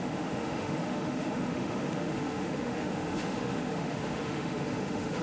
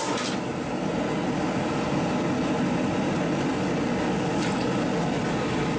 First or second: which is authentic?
second